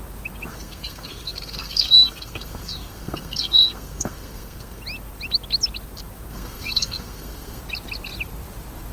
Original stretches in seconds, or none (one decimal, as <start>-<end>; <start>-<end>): 0.0-0.5; 4.8-6.3; 7.6-8.9